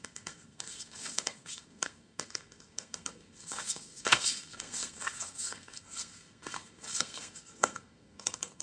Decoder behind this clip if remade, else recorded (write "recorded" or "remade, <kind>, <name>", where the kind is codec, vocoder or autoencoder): remade, codec, SNAC